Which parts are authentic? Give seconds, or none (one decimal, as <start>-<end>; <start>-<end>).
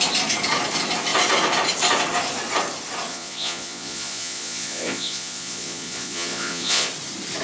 0.0-3.1; 6.9-7.4